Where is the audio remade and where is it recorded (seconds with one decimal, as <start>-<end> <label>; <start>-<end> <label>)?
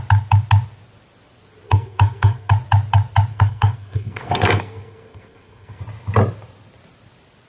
0.0-1.7 recorded; 1.7-2.5 remade; 2.5-3.3 recorded; 3.3-5.8 remade; 5.8-7.5 recorded